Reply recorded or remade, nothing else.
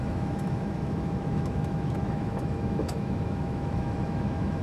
remade